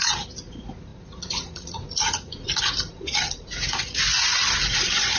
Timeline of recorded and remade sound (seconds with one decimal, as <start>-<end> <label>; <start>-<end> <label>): 0.0-5.2 remade